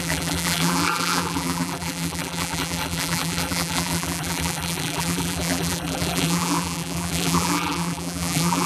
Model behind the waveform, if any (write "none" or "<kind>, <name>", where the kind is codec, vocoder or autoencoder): vocoder, BigVGAN v2